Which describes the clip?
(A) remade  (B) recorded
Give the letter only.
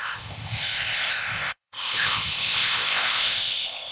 A